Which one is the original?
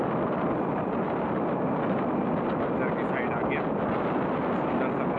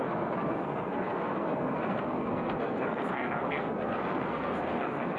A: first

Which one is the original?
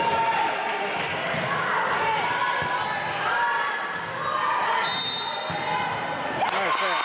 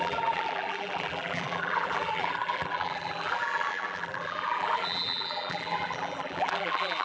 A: first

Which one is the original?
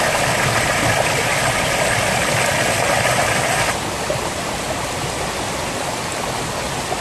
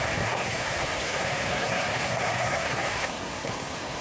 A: first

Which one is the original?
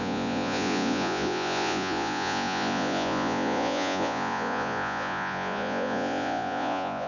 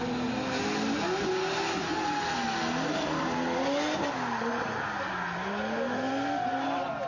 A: second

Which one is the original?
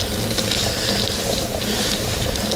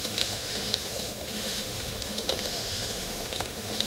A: first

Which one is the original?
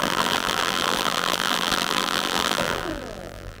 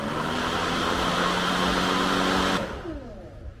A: second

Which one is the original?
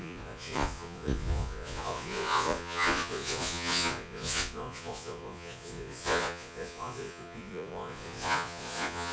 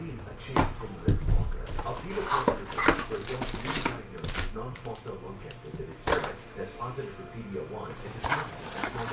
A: second